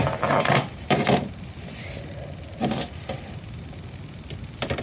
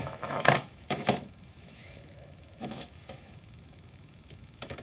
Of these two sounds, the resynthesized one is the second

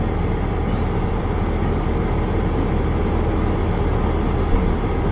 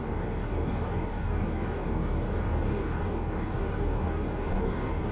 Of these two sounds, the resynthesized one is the second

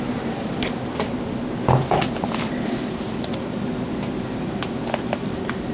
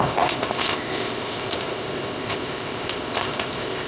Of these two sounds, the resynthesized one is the second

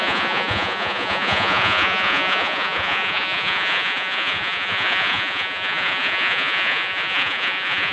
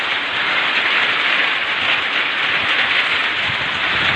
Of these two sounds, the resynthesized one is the first